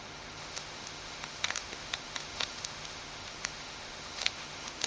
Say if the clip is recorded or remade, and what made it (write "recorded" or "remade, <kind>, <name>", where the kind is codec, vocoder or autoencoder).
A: remade, autoencoder, DAC-VAE